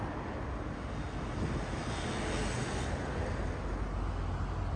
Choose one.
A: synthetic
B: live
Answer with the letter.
B